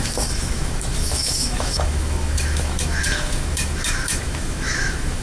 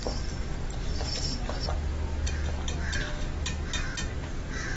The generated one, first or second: first